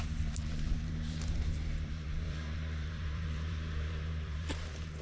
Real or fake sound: fake